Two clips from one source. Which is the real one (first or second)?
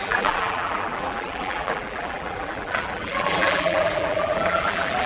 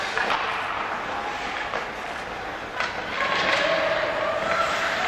second